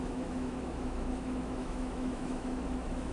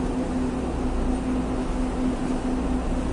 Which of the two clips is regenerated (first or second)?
first